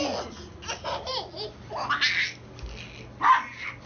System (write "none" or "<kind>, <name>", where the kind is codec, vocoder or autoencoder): none